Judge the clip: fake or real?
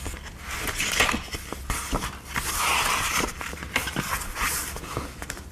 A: real